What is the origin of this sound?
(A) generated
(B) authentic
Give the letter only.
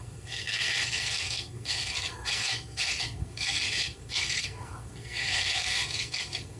A